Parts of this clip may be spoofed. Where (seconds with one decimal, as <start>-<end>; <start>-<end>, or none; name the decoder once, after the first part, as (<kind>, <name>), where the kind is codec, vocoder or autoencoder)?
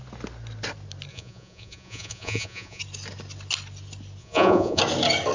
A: 1.1-2.8 (vocoder, Vocos); 4.2-4.8